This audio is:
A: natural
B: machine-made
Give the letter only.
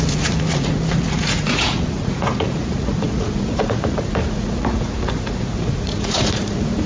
B